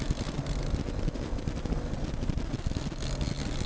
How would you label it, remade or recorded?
recorded